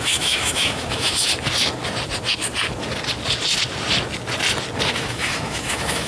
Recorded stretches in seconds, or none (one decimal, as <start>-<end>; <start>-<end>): 1.3-4.9